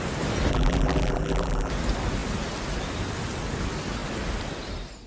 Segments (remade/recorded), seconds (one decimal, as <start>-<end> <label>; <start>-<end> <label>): 0.0-0.5 recorded; 0.5-1.7 remade; 1.7-5.1 recorded